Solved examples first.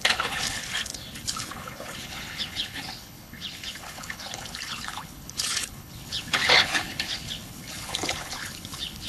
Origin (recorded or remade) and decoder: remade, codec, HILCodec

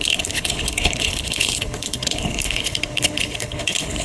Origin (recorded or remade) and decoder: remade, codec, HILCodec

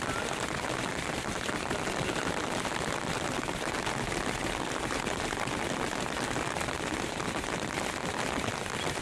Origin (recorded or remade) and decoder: recorded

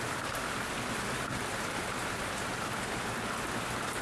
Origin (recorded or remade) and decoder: recorded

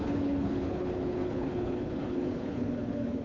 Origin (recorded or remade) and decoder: remade, codec, HILCodec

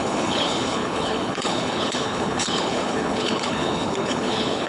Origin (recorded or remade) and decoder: remade, codec, HILCodec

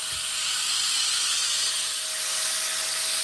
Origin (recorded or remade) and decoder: recorded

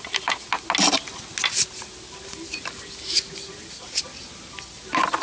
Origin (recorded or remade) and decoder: recorded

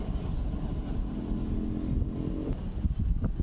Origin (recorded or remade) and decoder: recorded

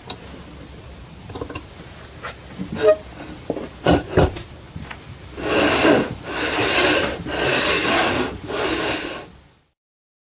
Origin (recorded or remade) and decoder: recorded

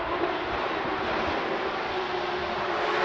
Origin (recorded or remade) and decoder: recorded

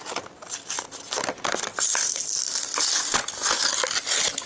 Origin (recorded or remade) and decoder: recorded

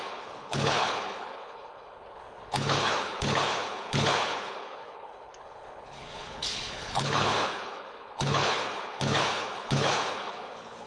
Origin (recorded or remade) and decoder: remade, codec, HILCodec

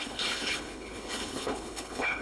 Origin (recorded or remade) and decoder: remade, codec, HILCodec